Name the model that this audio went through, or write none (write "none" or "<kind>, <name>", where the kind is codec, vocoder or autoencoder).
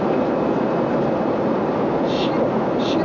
none